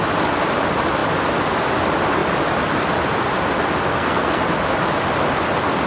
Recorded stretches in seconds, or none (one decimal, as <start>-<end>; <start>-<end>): 0.0-3.9; 4.4-5.9